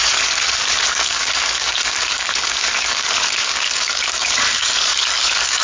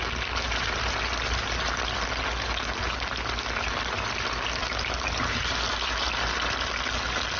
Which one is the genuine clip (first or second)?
second